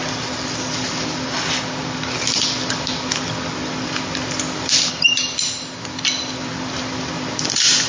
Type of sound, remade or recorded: remade